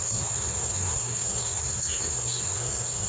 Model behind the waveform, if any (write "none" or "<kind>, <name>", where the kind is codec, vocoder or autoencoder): codec, SNAC